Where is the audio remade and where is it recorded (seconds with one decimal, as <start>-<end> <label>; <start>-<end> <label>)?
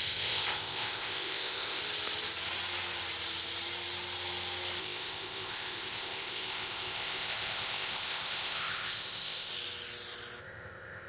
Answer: 0.0-1.8 remade; 1.8-4.8 recorded; 4.8-9.5 remade; 9.5-10.4 recorded; 10.4-11.1 remade